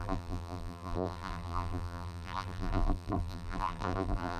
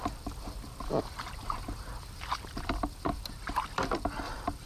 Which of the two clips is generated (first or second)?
first